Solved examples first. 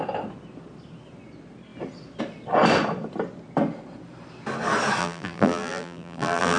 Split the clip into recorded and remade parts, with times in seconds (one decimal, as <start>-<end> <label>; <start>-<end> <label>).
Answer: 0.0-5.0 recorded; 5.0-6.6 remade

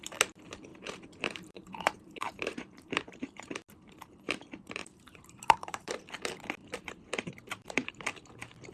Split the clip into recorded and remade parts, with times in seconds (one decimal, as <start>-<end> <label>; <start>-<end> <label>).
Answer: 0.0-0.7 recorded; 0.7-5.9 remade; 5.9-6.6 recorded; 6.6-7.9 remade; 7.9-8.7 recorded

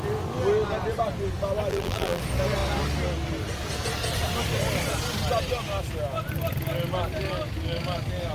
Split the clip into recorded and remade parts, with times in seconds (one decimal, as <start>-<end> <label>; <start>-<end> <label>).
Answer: 0.0-1.7 recorded; 1.7-2.2 remade; 2.2-8.3 recorded

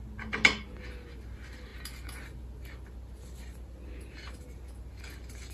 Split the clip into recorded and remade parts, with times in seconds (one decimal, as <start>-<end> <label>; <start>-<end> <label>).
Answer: 0.0-5.5 recorded